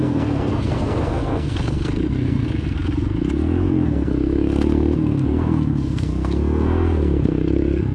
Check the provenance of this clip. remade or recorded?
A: remade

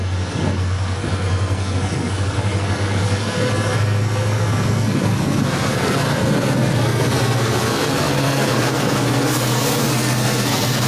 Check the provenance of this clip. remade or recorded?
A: remade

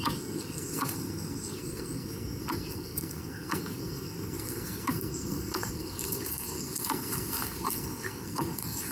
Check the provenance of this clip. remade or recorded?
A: remade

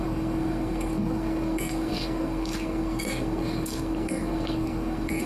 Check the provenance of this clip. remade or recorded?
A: remade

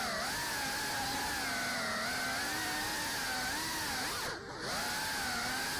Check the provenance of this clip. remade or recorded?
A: recorded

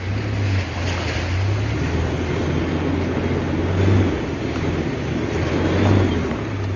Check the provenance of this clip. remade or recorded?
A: recorded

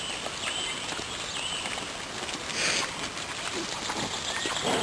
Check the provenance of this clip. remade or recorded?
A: recorded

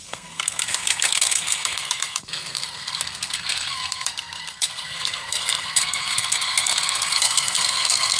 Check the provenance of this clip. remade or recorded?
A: remade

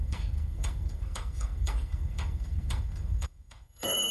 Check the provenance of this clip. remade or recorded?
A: remade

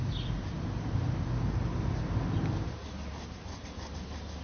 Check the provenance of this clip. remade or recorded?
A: recorded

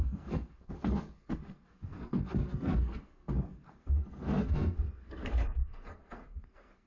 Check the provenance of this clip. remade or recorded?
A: remade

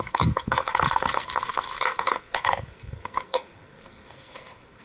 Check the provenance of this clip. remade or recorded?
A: remade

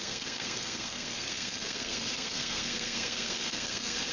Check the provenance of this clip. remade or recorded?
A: remade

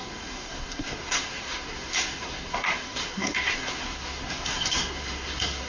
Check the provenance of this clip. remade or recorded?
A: remade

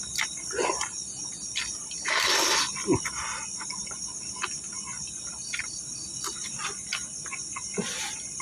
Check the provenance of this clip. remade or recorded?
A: recorded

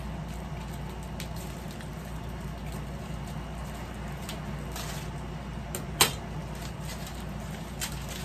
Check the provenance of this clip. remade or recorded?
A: recorded